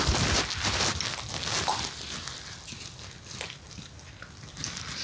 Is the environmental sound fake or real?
real